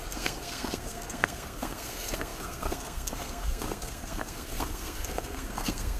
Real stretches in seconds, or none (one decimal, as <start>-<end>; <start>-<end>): none